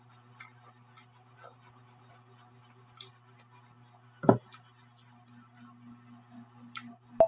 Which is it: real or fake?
real